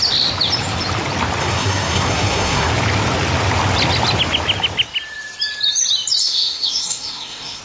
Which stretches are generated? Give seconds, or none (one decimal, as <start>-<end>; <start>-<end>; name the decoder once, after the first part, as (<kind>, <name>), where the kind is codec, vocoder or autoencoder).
1.4-2.7 (codec, SNAC); 6.2-7.6

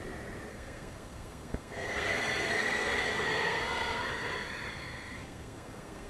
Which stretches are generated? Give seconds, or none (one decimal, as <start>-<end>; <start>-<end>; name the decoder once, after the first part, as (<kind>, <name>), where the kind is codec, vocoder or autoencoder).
0.5-4.1 (codec, SNAC); 4.7-6.1

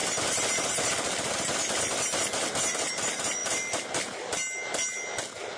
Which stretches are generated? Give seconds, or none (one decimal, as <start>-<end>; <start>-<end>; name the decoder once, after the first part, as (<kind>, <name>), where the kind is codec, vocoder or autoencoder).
none

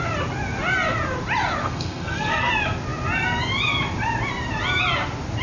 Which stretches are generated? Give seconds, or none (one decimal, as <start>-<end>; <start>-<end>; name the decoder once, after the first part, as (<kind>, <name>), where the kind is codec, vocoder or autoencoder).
1.6-2.5 (codec, SNAC)

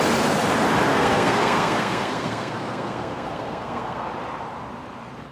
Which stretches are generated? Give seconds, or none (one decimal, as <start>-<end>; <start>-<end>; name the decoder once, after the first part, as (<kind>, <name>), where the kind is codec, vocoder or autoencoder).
0.9-4.1 (codec, SNAC)

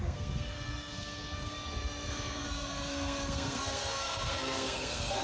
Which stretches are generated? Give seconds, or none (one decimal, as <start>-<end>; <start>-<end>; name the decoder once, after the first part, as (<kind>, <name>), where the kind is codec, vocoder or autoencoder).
0.0-5.2 (codec, SNAC)

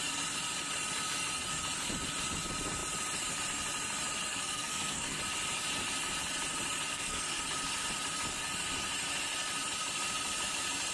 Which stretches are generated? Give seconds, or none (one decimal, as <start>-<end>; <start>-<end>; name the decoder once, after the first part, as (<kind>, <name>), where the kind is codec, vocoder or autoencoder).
4.3-5.2 (codec, SNAC); 6.9-7.4